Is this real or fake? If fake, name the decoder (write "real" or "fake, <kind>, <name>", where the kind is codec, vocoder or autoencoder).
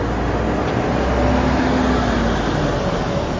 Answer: real